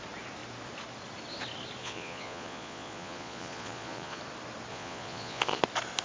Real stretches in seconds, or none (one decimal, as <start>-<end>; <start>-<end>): 0.0-1.8; 4.2-4.7; 5.6-6.0